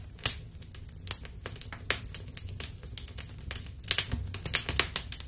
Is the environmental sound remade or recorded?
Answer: recorded